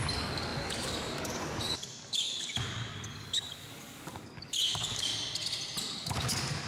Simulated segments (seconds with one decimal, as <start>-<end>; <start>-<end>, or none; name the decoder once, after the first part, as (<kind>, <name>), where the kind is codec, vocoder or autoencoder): 0.0-5.1 (codec, DAC); 5.8-6.7